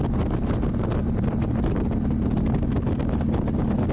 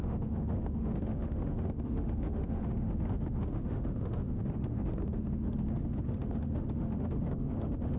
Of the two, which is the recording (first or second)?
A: first